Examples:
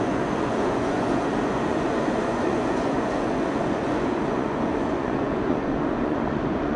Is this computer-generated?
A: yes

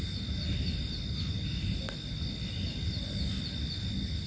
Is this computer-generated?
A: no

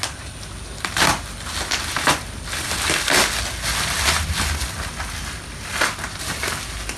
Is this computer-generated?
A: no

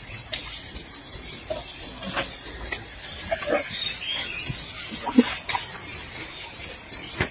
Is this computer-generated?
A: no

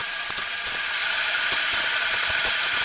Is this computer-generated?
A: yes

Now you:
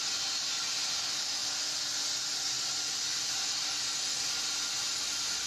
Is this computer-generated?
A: no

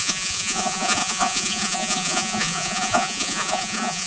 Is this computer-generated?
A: yes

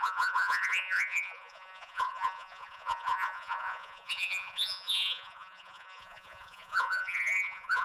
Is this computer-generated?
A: yes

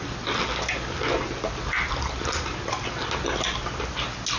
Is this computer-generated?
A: no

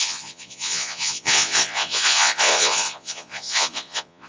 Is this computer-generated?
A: yes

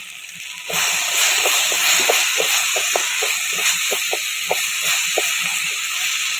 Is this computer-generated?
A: no